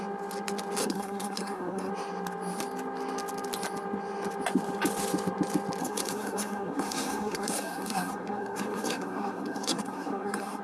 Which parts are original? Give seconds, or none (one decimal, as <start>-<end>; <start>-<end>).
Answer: 0.0-0.8; 1.9-5.8